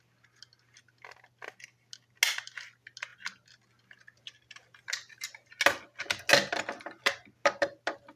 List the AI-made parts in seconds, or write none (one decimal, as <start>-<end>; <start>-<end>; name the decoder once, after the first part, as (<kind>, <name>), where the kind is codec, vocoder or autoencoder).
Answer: none